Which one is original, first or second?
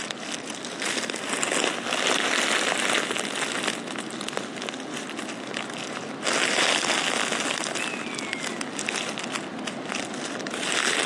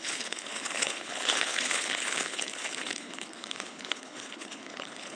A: first